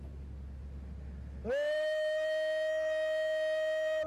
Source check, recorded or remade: recorded